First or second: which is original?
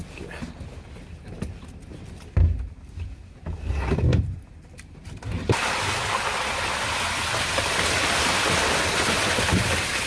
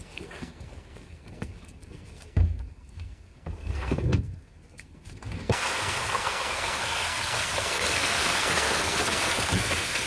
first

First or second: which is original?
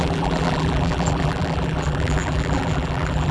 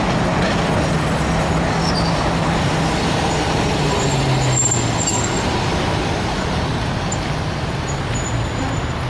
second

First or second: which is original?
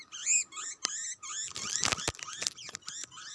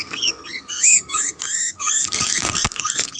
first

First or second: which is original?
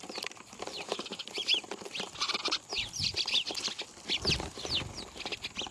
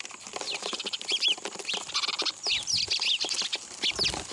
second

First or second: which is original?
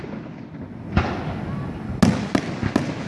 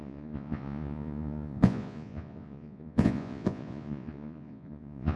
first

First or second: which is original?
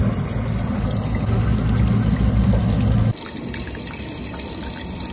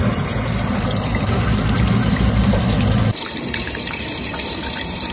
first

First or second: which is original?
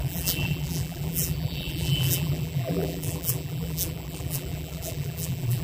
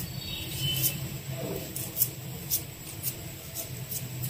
second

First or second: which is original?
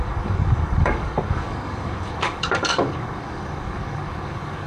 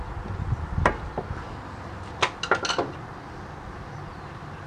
second